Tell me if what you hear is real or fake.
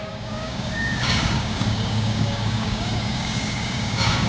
fake